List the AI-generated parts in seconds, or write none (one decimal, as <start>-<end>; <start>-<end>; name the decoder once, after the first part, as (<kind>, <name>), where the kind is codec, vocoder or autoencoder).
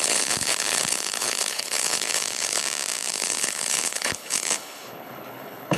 0.0-2.6 (codec, HILCodec); 3.1-5.8